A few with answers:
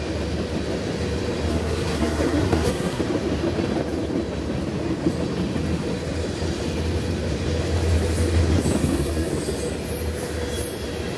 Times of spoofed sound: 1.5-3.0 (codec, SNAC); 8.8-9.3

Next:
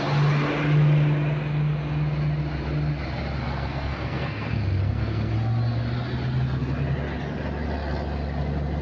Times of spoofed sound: 3.4-5.3 (codec, SNAC)

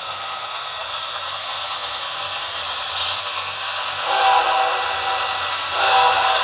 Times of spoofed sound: 0.0-2.6 (codec, SNAC); 3.2-3.8; 5.5-6.4

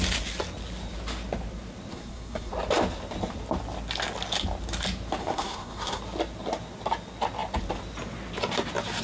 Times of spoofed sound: 1.9-2.5 (codec, SNAC); 5.2-6.0

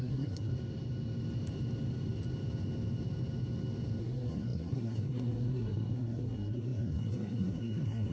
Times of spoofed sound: 0.0-0.5 (codec, SNAC); 4.0-8.1

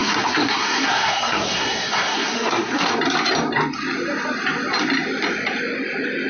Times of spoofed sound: 0.0-2.9 (codec, SNAC)

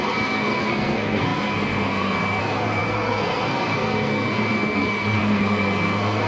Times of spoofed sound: 0.0-6.3 (codec, SNAC)

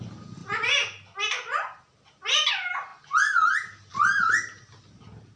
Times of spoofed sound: none